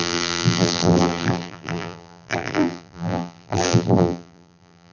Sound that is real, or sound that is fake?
fake